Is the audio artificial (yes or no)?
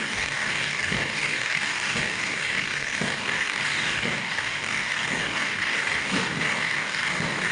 yes